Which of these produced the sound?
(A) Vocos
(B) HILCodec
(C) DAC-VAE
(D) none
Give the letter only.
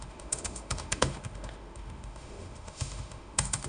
C